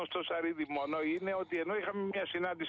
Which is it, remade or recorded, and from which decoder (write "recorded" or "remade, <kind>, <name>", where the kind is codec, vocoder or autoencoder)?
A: recorded